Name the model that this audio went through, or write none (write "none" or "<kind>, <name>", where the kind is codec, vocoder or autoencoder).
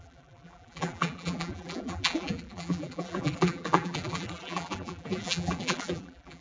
vocoder, BigVGAN v2